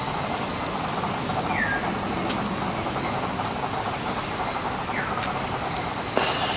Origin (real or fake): real